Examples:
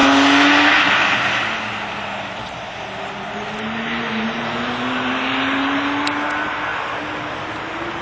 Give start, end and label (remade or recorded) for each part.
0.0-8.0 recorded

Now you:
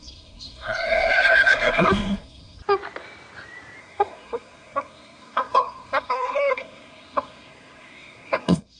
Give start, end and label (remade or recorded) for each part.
0.0-2.6 remade; 2.6-3.8 recorded; 3.8-8.8 remade

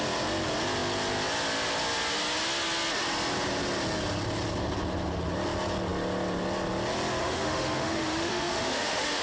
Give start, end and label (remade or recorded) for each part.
0.0-7.2 recorded; 7.2-9.2 remade

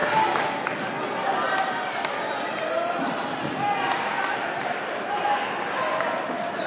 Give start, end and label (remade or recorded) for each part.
0.0-6.7 recorded

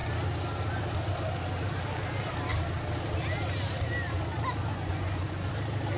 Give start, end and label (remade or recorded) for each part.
0.0-4.7 recorded; 4.7-5.5 remade; 5.5-6.0 recorded

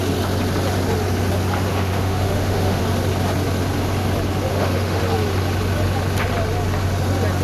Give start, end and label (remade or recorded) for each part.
0.0-1.7 recorded; 1.7-2.8 remade; 2.8-4.5 recorded; 4.5-5.0 remade; 5.0-7.4 recorded